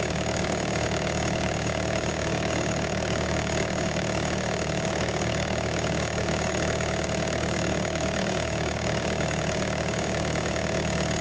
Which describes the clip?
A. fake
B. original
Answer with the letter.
A